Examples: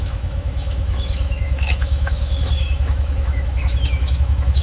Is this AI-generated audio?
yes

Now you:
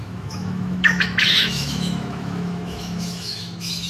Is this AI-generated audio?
yes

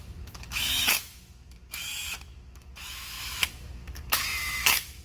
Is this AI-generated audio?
yes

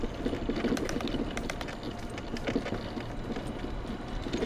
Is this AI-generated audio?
no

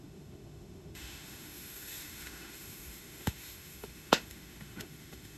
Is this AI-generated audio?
yes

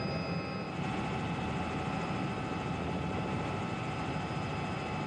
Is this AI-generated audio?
no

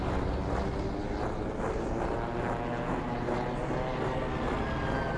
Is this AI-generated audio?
no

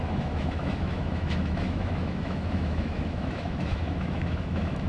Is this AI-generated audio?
yes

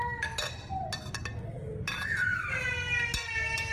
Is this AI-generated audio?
no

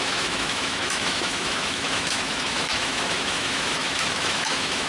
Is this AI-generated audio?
yes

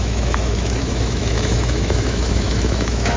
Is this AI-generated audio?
yes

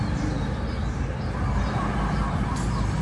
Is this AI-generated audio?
no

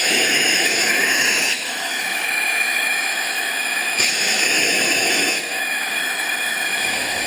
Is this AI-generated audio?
yes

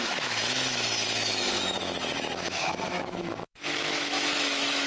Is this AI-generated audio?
yes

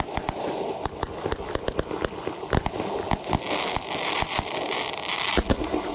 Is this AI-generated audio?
no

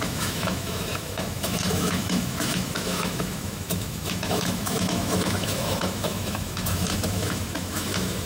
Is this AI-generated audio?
yes